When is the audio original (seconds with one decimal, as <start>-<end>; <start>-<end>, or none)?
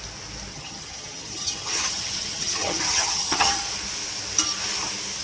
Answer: 0.0-0.5; 3.6-5.2